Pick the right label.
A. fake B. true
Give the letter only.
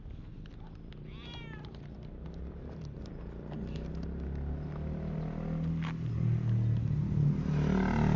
B